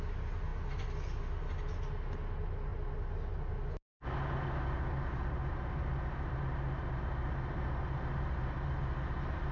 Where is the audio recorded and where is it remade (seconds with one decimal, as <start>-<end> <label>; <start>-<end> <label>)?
0.0-9.5 recorded